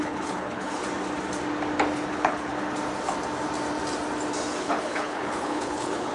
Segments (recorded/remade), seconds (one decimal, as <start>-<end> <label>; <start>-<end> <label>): 0.0-0.8 remade; 0.8-2.1 recorded; 2.1-2.5 remade; 2.5-4.6 recorded; 4.6-6.1 remade